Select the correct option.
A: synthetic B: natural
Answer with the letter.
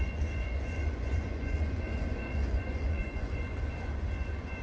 A